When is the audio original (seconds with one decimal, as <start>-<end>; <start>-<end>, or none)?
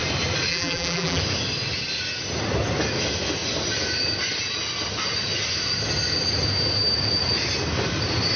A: 0.0-0.5; 1.2-8.4